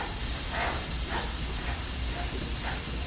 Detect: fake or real real